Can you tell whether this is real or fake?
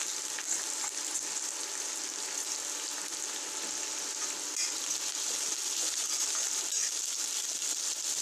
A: real